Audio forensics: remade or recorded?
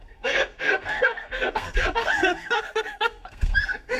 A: remade